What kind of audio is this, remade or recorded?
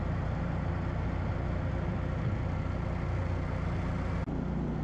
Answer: recorded